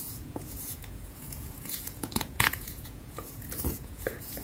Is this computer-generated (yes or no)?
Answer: yes